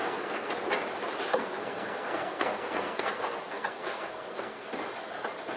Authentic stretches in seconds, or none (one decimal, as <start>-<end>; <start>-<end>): 0.5-1.3; 4.7-5.6